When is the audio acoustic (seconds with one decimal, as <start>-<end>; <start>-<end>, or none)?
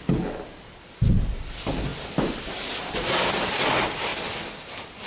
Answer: 0.0-5.1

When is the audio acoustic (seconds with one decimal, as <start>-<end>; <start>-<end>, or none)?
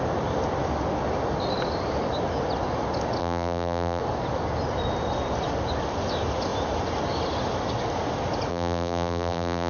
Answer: 0.0-3.2; 4.0-8.5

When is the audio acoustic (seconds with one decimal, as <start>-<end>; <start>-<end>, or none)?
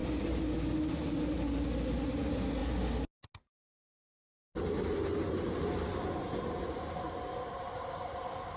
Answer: 0.0-8.6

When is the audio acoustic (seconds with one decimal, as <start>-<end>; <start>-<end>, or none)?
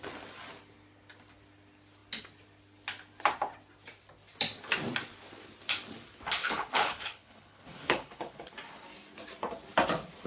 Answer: 0.0-6.4; 8.5-10.3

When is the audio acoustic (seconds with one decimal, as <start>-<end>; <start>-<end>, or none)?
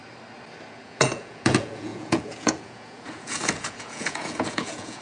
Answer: 0.0-0.7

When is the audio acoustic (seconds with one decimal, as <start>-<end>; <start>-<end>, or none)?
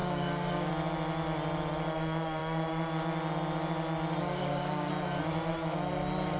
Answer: 0.7-4.2; 4.9-6.4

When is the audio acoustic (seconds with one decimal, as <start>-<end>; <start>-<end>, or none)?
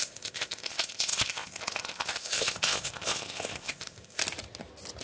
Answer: 4.2-5.0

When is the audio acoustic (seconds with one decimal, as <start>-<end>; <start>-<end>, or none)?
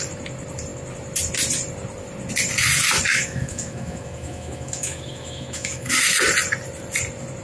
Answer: 0.0-3.1; 5.9-7.4